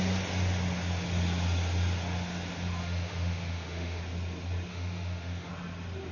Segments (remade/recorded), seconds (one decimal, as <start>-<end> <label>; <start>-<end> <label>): 0.0-2.8 recorded; 2.8-4.0 remade; 4.0-4.7 recorded; 4.7-5.5 remade; 5.5-6.1 recorded